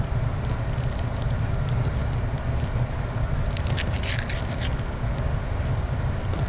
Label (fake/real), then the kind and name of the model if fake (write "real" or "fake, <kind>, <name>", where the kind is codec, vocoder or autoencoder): real